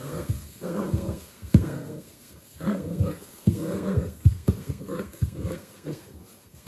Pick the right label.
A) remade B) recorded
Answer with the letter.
A